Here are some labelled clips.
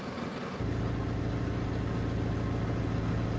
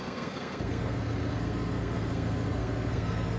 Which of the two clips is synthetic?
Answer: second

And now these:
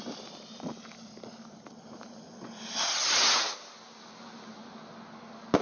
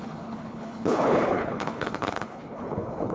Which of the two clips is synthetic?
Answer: second